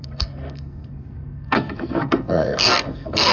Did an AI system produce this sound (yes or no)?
yes